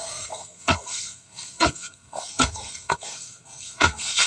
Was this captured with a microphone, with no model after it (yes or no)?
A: no